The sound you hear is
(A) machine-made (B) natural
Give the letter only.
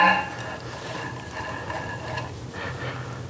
B